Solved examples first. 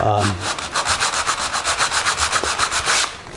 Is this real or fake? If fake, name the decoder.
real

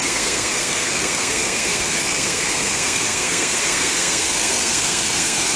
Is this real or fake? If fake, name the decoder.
fake, codec, SNAC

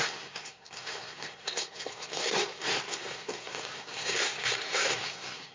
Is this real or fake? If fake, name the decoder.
fake, codec, SNAC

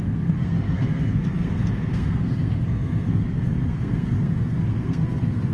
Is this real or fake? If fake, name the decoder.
fake, codec, SNAC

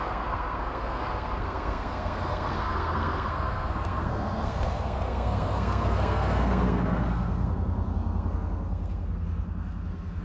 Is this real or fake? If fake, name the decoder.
fake, codec, SNAC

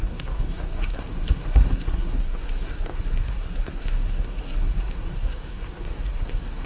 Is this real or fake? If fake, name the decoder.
fake, codec, SNAC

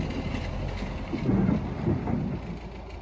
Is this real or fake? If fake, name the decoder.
real